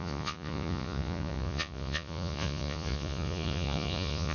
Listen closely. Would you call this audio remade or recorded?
remade